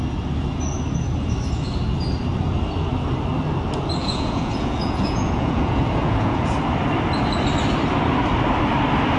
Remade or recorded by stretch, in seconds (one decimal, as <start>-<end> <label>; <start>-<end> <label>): 0.0-4.0 recorded; 4.0-6.6 remade; 6.6-9.2 recorded